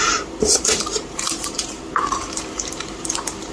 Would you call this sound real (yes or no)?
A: no